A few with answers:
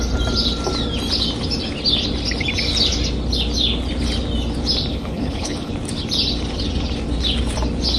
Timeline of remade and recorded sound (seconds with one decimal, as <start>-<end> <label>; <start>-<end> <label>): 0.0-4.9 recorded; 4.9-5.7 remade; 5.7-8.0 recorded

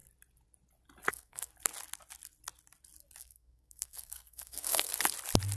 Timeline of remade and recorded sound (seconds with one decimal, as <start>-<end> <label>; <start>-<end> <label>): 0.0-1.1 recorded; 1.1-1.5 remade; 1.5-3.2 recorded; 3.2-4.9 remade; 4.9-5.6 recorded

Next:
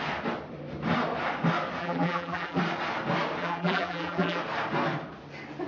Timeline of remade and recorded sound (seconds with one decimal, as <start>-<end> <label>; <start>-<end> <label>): 0.0-1.8 recorded; 1.8-2.6 remade; 2.6-3.4 recorded; 3.4-4.4 remade; 4.4-5.7 recorded